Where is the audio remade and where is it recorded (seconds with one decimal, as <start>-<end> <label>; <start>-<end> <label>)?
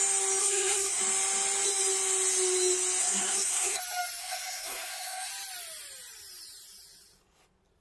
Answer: 0.0-0.4 recorded; 0.4-1.0 remade; 1.0-3.0 recorded; 3.0-3.8 remade; 3.8-4.2 recorded; 4.2-5.3 remade; 5.3-7.8 recorded